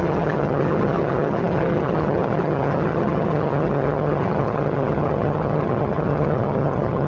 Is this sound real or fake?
fake